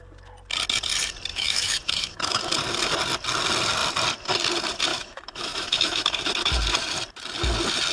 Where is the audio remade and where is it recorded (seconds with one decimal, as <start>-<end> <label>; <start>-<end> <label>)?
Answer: 0.0-1.3 recorded; 1.3-2.4 remade; 2.4-4.9 recorded; 4.9-6.2 remade; 6.2-7.9 recorded